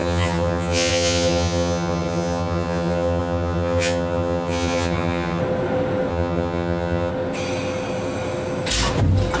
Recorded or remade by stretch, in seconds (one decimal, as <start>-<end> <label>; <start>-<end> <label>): 0.0-5.4 remade; 5.4-6.1 recorded; 6.1-7.1 remade; 7.1-9.4 recorded